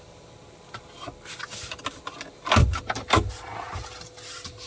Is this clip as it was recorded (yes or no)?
yes